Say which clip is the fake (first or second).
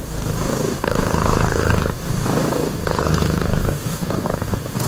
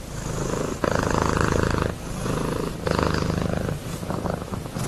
first